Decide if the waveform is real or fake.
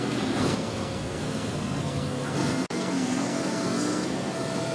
fake